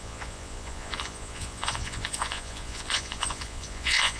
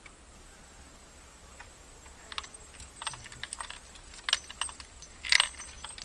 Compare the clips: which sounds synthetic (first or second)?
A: first